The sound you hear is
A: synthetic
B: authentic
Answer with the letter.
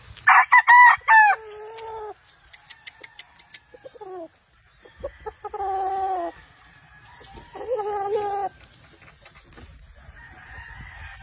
B